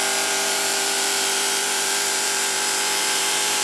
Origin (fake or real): fake